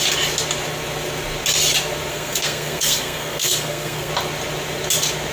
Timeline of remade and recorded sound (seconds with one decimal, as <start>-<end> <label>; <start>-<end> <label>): 0.0-2.1 recorded; 2.1-4.1 remade; 4.1-5.3 recorded